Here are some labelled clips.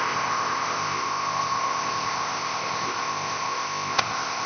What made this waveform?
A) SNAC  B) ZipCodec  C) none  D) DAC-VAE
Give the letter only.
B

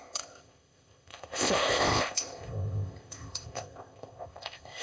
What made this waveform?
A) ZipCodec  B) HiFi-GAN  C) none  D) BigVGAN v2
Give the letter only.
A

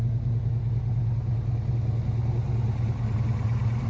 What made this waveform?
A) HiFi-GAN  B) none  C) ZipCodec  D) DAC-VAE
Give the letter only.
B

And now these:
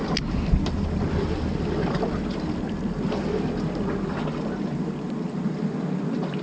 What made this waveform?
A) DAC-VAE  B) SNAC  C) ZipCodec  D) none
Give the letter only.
D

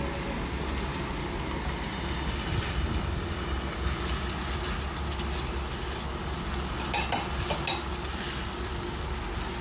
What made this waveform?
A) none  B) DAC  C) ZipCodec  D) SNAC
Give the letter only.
A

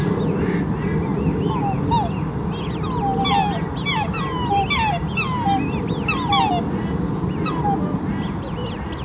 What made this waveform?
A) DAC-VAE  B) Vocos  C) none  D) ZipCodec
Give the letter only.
C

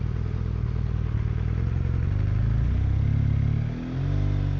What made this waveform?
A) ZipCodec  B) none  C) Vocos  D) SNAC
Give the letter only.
B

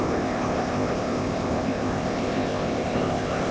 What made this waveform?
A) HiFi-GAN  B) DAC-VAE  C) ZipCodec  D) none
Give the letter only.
C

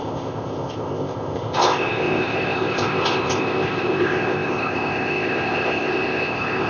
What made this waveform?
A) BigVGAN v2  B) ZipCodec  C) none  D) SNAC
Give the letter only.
B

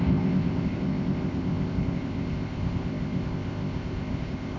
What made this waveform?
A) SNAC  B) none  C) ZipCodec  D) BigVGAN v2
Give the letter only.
C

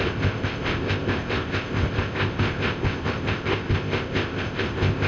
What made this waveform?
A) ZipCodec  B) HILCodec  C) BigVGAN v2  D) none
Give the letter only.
A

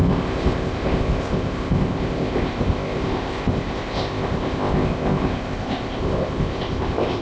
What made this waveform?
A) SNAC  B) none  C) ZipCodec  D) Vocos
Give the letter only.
C